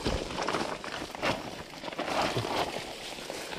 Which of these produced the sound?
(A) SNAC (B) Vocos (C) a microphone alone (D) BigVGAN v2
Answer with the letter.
D